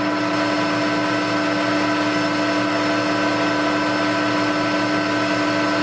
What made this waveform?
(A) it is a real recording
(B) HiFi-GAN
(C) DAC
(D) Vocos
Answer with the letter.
A